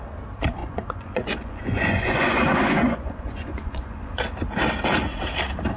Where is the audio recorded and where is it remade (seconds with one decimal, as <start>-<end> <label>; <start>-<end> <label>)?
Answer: 0.0-0.6 recorded; 0.6-4.1 remade; 4.1-5.8 recorded